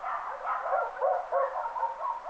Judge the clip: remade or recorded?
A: recorded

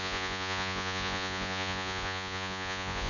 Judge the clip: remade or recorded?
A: remade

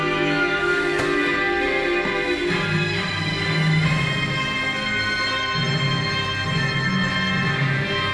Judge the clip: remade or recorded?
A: recorded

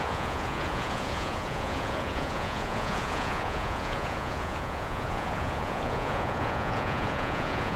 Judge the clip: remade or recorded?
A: remade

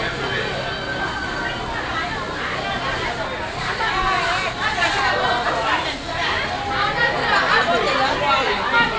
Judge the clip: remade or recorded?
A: recorded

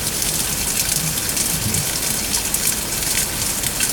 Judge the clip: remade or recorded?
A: recorded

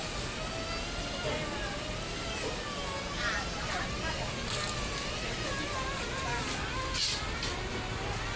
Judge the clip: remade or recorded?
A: recorded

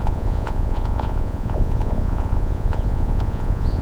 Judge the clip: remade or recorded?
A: remade